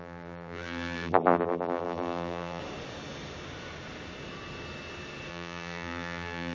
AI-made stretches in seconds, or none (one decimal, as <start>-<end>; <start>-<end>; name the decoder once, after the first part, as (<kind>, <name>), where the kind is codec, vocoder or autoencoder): 0.0-2.6 (vocoder, BigVGAN v2); 5.3-6.5